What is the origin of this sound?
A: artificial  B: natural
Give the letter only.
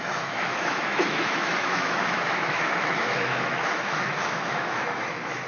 A